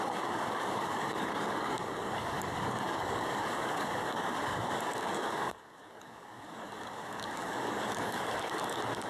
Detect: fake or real fake